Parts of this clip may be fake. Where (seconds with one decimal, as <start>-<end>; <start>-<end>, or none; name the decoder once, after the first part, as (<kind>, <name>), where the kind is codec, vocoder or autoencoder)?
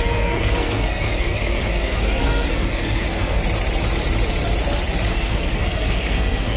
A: 0.0-3.4 (codec, SNAC); 5.1-6.6